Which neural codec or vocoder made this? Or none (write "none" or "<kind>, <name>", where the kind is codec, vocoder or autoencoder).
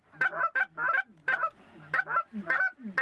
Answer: none